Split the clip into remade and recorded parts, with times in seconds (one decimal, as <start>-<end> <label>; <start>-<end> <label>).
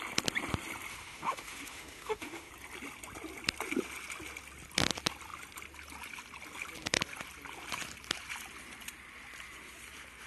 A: 0.0-0.9 recorded; 0.9-2.5 remade; 2.5-10.3 recorded